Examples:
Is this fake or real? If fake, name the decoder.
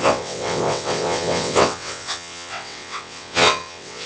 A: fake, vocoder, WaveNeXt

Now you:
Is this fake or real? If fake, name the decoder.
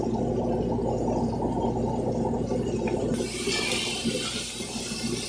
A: real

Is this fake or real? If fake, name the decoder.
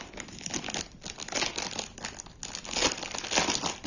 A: real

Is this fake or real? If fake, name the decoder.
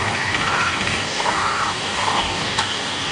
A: fake, codec, DAC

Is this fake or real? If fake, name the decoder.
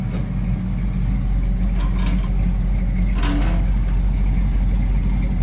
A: real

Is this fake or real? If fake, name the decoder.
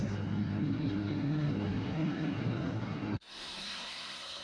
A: fake, codec, SNAC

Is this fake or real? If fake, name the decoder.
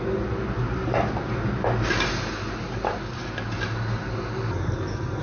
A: real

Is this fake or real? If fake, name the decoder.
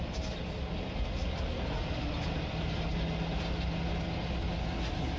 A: real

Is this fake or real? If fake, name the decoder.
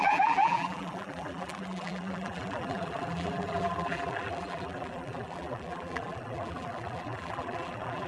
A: fake, vocoder, BigVGAN v2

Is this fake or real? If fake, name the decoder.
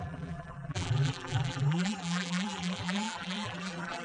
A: fake, vocoder, BigVGAN v2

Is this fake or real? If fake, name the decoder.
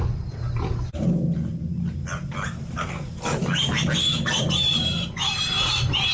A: real